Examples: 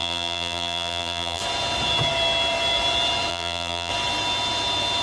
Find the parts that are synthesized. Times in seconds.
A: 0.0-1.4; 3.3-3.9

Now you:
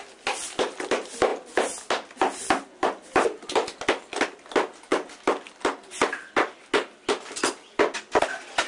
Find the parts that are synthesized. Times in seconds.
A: none

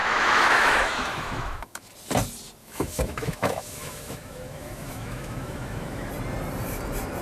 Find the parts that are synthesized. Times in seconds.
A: 0.0-1.9; 2.6-6.1

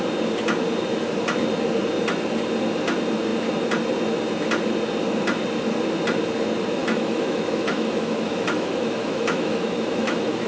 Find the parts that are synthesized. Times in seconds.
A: 6.8-10.5

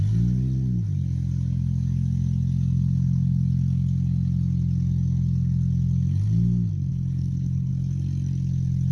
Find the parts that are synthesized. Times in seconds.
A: 6.9-7.7

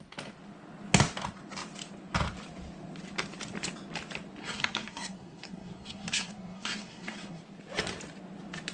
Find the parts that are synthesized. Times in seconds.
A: 4.4-7.4

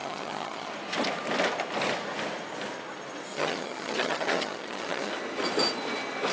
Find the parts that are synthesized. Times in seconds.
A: 0.0-0.7; 3.3-5.1